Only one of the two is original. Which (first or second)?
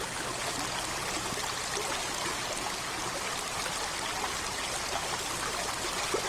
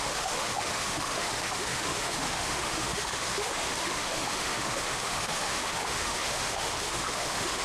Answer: first